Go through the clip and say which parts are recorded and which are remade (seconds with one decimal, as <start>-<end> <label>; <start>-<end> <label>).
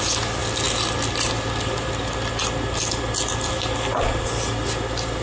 0.0-5.2 recorded